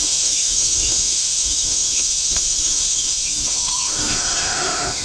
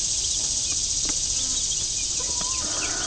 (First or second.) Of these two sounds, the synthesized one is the first